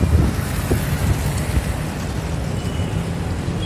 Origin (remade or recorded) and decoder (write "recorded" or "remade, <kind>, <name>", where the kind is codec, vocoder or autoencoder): recorded